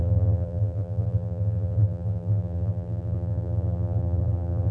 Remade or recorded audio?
remade